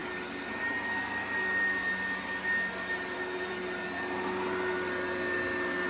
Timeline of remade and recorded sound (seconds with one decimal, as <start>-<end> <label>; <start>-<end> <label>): 0.0-5.9 recorded